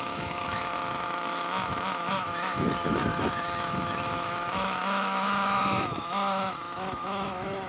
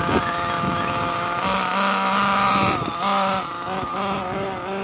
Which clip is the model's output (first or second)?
first